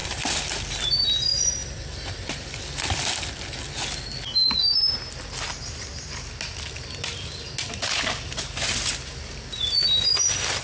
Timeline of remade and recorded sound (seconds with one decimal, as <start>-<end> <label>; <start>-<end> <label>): 0.0-0.9 remade; 0.9-1.6 recorded; 1.6-3.3 remade; 3.3-10.6 recorded